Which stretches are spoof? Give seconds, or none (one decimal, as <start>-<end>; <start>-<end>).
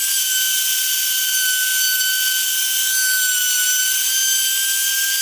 none